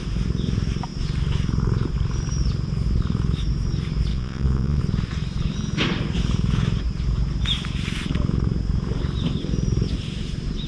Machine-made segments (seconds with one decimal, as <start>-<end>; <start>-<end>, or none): 4.1-4.8